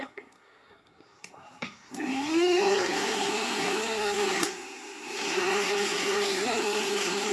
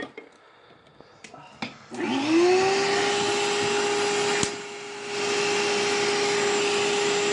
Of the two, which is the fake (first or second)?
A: first